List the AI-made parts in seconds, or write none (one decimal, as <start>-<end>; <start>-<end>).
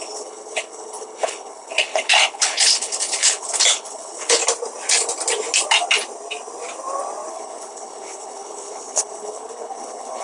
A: 0.0-4.4; 7.3-10.2